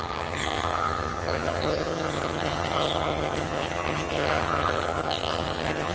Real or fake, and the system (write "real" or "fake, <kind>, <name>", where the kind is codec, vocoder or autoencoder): fake, vocoder, HiFi-GAN